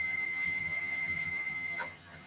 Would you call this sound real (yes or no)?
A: no